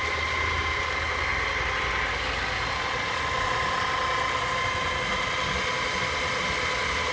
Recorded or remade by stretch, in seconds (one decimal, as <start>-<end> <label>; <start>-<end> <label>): 0.0-7.1 recorded